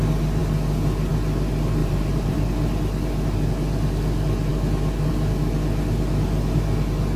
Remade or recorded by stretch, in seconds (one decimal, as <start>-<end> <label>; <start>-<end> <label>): 0.0-1.8 recorded; 1.8-2.4 remade; 2.4-7.2 recorded